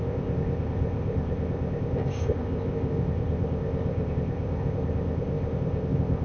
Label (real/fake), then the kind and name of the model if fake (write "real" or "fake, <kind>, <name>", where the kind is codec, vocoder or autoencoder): fake, codec, ZipCodec